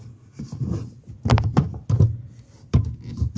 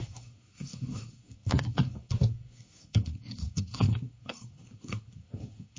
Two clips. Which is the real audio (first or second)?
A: first